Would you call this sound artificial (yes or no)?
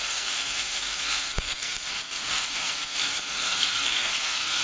yes